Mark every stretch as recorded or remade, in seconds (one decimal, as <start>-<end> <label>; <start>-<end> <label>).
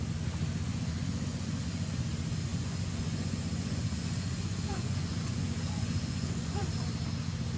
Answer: 0.0-0.7 recorded; 0.7-1.9 remade; 1.9-2.5 recorded; 2.5-6.7 remade; 6.7-7.6 recorded